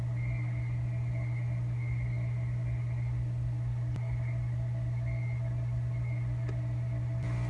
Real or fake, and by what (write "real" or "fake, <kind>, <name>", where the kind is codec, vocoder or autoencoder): real